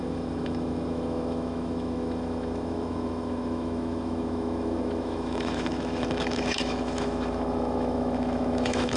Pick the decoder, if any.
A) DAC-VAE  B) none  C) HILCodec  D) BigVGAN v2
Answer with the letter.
A